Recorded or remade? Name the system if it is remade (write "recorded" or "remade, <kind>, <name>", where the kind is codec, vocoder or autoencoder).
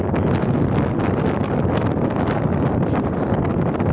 recorded